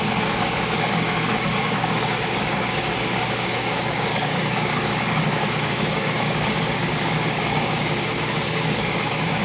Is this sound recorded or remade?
remade